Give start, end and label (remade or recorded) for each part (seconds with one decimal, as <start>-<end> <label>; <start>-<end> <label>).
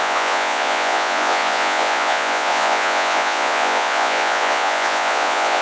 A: 0.0-5.6 remade